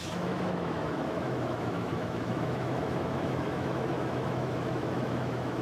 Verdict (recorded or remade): remade